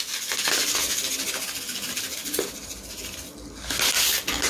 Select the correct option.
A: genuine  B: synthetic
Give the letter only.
A